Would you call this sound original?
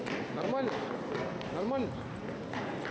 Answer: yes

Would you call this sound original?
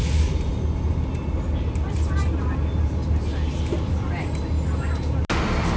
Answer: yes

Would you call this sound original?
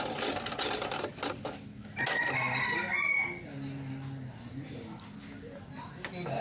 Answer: yes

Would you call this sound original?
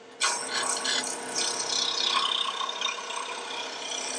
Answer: yes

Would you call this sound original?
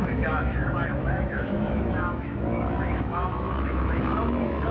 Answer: no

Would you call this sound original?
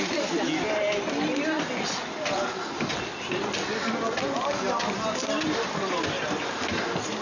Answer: yes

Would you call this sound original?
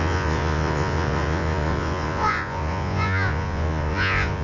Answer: no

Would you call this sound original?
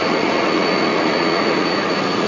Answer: no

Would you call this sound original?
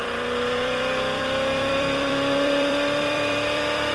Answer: no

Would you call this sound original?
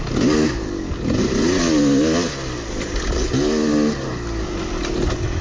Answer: yes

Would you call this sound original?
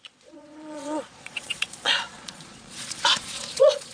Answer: no